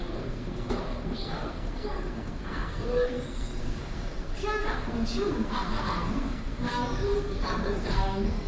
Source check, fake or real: fake